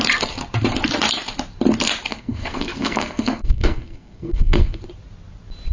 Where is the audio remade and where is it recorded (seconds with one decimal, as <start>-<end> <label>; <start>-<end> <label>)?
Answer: 0.0-2.1 recorded; 2.1-4.8 remade; 4.8-5.7 recorded